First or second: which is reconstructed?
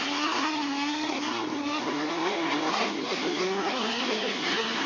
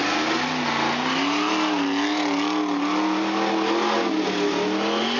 first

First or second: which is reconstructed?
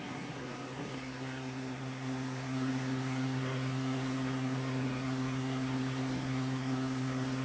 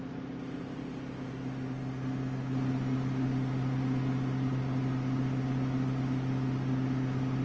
first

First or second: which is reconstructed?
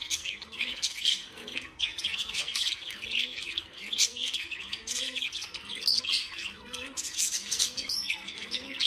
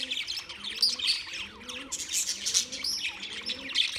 first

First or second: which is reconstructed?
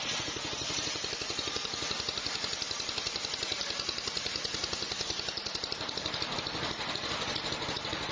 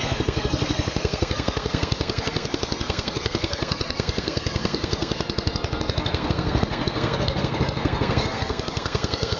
second